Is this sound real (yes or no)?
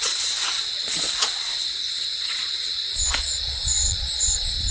no